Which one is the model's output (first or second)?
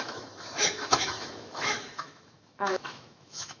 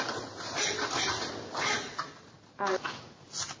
first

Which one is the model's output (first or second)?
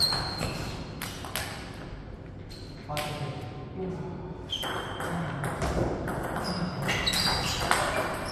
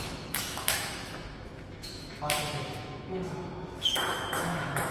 second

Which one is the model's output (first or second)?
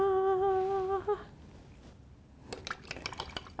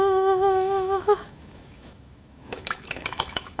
second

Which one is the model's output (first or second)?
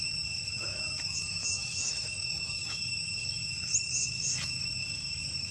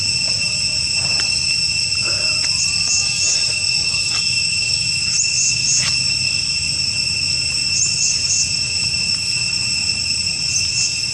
first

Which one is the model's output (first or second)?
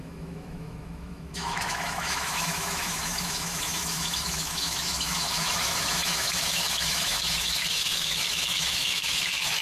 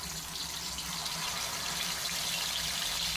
first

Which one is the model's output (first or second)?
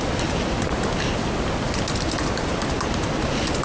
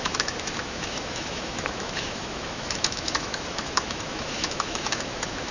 second